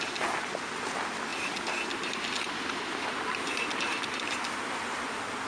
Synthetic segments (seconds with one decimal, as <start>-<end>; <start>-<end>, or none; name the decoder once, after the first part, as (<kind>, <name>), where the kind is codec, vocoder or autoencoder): none